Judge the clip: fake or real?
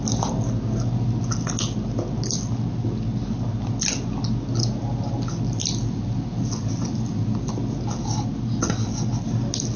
real